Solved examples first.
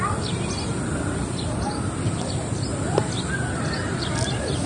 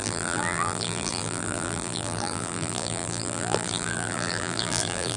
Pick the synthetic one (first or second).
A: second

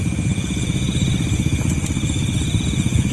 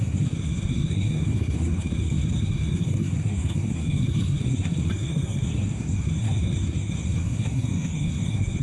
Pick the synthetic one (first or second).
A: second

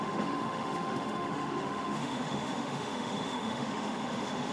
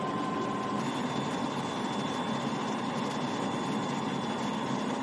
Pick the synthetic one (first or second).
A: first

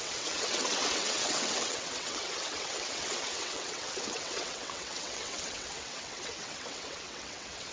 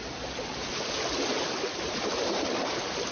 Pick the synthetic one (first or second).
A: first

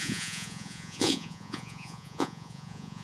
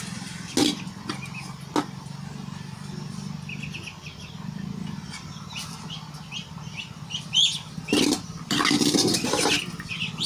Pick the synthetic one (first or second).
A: first